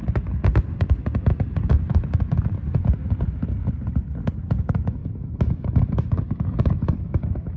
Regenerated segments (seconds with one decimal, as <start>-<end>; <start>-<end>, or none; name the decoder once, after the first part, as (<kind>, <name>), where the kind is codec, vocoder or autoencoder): 4.6-7.6 (autoencoder, DAC-VAE)